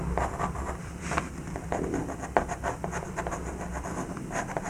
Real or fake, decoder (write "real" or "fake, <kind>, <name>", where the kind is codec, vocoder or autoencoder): fake, vocoder, BigVGAN v2